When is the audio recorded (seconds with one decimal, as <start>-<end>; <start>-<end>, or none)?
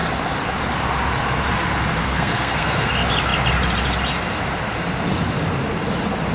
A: 0.0-2.0; 2.9-6.3